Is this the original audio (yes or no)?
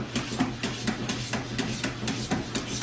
yes